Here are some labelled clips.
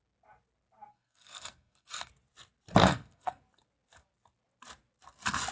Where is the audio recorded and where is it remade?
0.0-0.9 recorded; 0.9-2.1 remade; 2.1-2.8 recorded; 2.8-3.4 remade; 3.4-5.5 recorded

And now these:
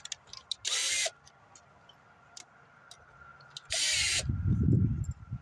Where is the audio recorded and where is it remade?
0.0-5.4 recorded